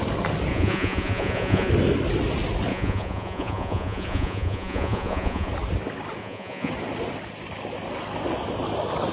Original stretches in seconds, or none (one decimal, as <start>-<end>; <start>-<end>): 0.0-0.5; 1.7-2.7; 5.5-6.2; 6.7-9.1